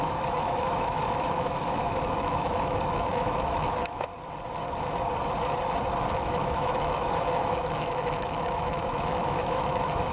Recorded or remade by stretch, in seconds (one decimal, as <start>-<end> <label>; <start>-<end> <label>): 0.0-4.1 remade; 4.1-6.1 recorded; 6.1-10.1 remade